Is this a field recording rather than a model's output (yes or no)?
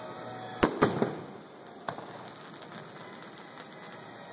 yes